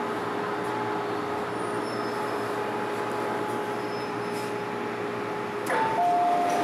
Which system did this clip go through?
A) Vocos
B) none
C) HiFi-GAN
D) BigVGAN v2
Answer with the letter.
B